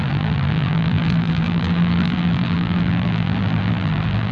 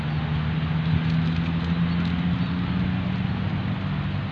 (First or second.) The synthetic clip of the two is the first